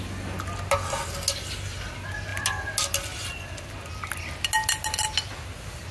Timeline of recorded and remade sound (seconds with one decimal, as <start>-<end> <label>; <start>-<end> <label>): 0.0-5.9 recorded